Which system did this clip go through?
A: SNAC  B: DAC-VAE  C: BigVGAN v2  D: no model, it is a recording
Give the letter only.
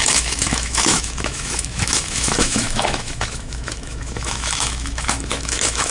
B